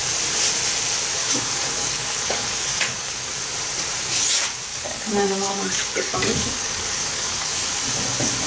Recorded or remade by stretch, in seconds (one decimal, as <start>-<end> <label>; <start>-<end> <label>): 0.0-1.2 recorded; 1.2-3.3 remade; 3.3-4.7 recorded; 4.7-7.8 remade; 7.8-8.5 recorded